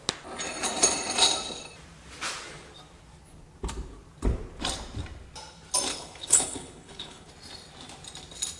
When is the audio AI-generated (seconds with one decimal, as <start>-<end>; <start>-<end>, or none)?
5.9-7.3